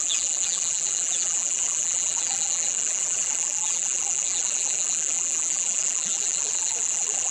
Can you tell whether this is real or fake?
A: fake